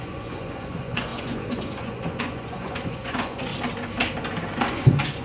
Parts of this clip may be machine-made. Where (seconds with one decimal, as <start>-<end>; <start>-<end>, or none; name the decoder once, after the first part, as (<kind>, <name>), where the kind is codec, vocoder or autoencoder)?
0.0-3.5 (vocoder, Vocos); 4.7-5.2